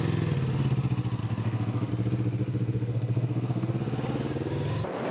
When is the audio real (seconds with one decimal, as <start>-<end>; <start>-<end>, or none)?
0.0-1.2; 1.9-2.5; 3.7-5.1